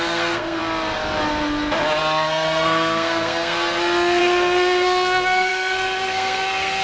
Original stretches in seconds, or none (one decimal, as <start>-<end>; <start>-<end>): 0.6-2.0